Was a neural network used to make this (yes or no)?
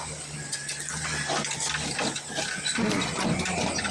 no